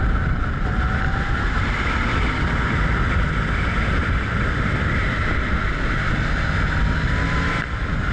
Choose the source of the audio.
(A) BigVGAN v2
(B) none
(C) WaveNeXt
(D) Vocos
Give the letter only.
B